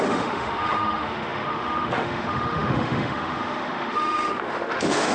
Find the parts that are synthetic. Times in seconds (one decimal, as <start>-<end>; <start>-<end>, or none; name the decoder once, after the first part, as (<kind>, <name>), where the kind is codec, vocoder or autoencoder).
0.0-5.1 (autoencoder, DAC-VAE)